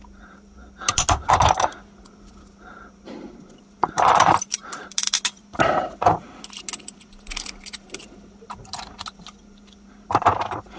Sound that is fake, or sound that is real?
real